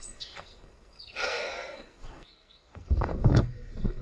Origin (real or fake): fake